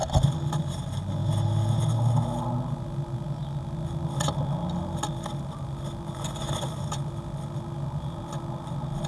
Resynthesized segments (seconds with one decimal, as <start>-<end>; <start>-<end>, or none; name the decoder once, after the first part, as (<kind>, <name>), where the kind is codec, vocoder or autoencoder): none